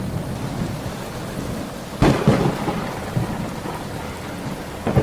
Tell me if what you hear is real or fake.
real